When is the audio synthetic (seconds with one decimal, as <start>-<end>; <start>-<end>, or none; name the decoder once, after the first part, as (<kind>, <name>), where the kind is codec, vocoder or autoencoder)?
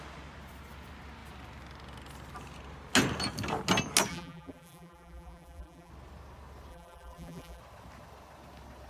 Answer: 4.1-5.9 (vocoder, BigVGAN v2); 6.7-7.6